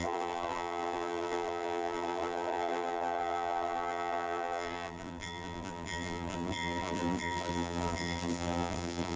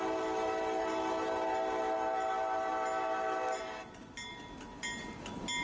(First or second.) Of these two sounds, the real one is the second